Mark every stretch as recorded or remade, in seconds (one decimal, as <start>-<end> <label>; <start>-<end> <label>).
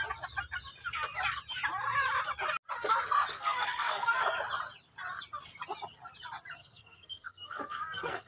0.0-3.3 recorded; 3.3-4.1 remade; 4.1-6.6 recorded; 6.6-8.3 remade